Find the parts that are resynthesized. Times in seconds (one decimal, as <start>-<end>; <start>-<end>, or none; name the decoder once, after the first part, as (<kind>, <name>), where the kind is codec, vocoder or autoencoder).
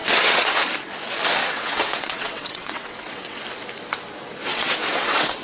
0.0-0.6 (vocoder, WaveNeXt); 1.4-3.4; 4.5-5.4